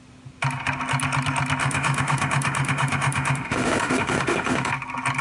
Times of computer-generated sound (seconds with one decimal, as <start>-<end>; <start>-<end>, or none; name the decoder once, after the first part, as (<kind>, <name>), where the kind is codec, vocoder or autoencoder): 1.6-4.7 (autoencoder, DAC-VAE)